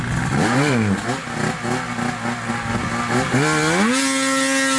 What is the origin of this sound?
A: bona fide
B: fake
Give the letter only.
A